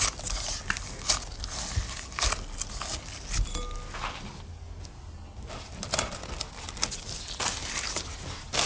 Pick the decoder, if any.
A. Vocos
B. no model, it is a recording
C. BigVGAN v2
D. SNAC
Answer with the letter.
B